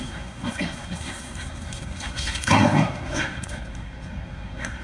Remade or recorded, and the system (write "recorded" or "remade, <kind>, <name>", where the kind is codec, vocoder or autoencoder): remade, codec, SNAC